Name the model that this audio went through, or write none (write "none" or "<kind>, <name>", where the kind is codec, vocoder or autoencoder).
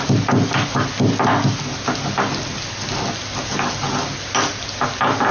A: none